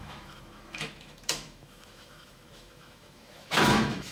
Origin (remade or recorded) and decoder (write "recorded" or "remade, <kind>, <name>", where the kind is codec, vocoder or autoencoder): remade, autoencoder, DAC-VAE